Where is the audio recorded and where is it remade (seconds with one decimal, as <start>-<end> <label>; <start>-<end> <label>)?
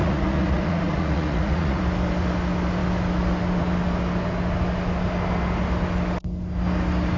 0.0-1.8 remade; 1.8-7.2 recorded